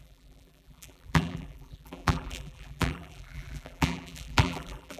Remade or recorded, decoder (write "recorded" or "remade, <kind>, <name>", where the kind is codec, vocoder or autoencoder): remade, vocoder, BigVGAN v2